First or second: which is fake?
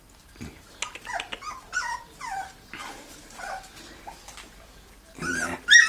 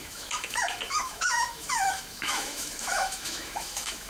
second